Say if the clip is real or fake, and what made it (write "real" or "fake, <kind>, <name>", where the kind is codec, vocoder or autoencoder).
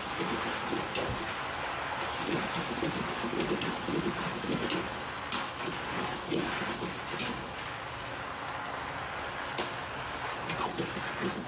real